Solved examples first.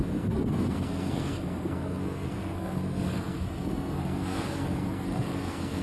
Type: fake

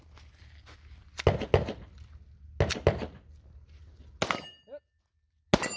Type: real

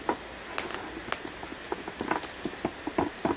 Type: real